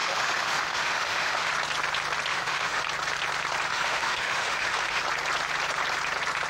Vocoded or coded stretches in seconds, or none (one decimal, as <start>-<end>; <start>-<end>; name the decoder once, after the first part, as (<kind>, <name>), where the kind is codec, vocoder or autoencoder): 0.0-1.5 (autoencoder, DAC-VAE); 2.3-2.8; 3.7-5.0